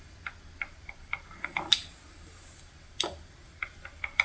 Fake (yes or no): no